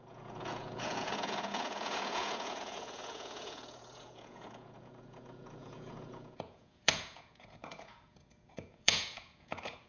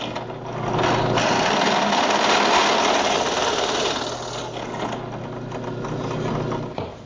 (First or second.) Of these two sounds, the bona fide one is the second